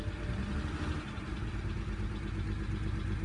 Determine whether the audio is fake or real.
real